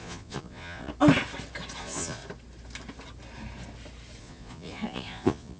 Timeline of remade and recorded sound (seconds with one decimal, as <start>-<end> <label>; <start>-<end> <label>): 0.0-0.9 remade; 0.9-1.8 recorded; 1.8-2.2 remade; 2.2-4.2 recorded; 4.2-5.6 remade